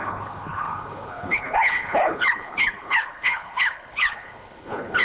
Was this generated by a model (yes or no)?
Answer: yes